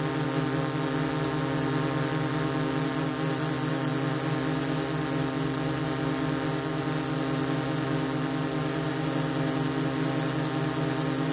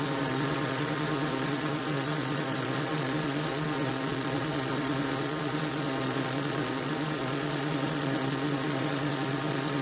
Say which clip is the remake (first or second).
second